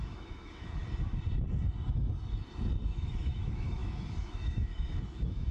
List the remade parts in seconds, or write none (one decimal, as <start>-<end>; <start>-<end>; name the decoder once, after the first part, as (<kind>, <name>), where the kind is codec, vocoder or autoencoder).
0.0-0.8 (autoencoder, DAC-VAE); 2.9-5.5